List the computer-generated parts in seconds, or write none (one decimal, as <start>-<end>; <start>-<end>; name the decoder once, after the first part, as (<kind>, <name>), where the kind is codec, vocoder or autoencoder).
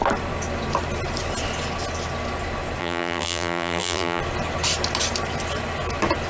2.8-4.2 (vocoder, BigVGAN v2)